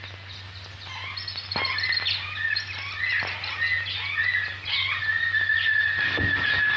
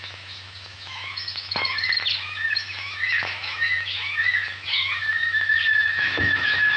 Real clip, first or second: first